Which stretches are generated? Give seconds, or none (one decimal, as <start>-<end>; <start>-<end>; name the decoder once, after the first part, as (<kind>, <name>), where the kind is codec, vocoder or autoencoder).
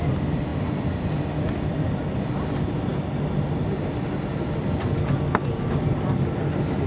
none